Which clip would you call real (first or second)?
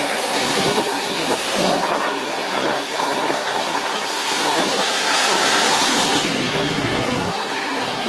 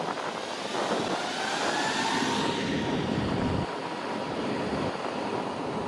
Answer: second